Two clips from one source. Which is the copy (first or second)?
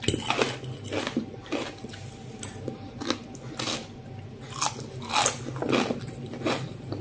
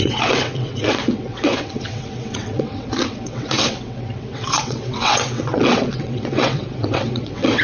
second